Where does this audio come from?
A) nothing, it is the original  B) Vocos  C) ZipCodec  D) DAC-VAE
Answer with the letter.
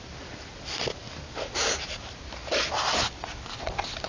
A